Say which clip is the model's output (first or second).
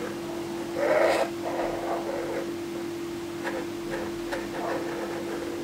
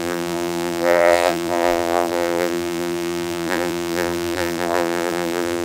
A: second